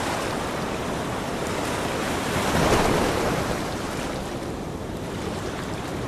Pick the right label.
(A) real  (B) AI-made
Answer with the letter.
B